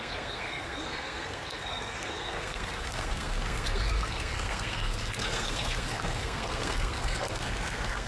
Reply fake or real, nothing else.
fake